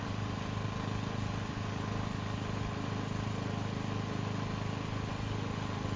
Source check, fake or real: real